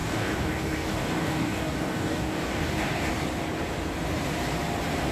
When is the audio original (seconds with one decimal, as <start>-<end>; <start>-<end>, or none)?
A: 3.1-5.1